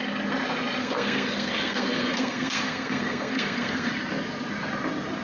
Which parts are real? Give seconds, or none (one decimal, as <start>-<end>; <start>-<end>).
0.0-0.8; 3.9-5.2